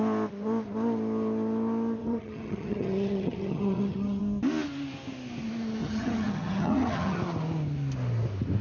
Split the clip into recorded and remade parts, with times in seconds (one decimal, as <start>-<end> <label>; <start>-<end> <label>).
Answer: 0.0-2.0 recorded; 2.0-4.2 remade; 4.2-5.8 recorded; 5.8-7.2 remade; 7.2-8.6 recorded